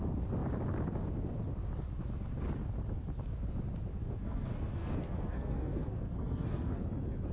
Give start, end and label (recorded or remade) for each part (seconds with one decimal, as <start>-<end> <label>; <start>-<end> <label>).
0.0-3.9 recorded; 3.9-6.8 remade; 6.8-7.3 recorded